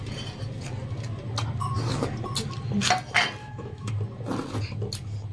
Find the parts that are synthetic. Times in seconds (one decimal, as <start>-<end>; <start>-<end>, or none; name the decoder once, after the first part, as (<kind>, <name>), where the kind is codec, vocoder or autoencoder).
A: 3.4-3.9 (autoencoder, DAC-VAE)